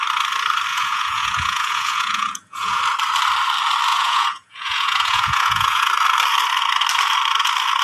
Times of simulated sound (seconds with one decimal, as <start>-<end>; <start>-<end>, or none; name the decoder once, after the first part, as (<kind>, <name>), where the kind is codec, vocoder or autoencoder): 0.7-2.8 (vocoder, Vocos); 3.9-5.9